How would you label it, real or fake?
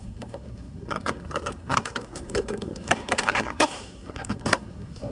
fake